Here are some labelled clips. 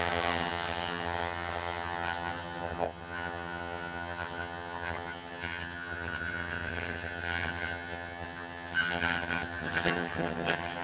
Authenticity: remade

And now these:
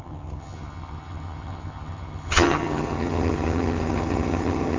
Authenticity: remade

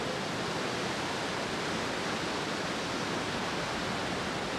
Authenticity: recorded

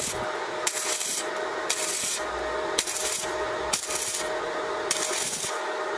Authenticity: recorded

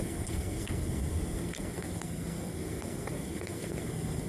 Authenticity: remade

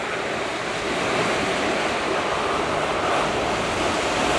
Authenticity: recorded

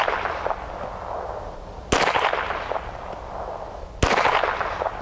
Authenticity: recorded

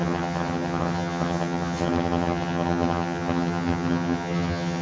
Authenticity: remade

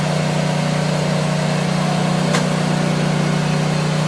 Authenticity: recorded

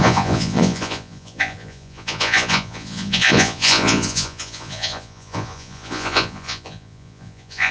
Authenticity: remade